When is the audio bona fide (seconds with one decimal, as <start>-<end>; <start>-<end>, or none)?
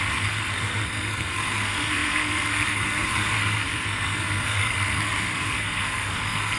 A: none